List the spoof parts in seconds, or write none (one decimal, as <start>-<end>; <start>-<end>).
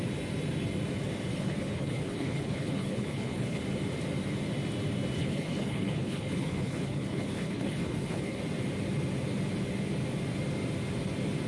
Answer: 1.3-3.6; 5.2-8.4